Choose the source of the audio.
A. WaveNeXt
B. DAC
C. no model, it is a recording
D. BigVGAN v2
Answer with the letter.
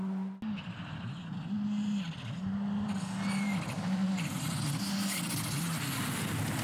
C